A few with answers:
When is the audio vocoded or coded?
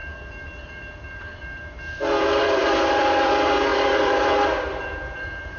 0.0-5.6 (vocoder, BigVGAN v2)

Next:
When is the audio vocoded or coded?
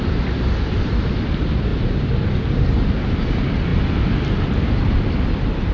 0.0-5.7 (vocoder, BigVGAN v2)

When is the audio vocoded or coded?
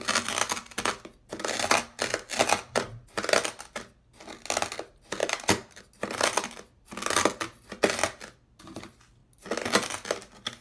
5.2-5.8 (vocoder, BigVGAN v2)